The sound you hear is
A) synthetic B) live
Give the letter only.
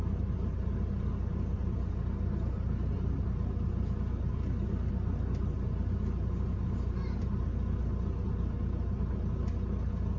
B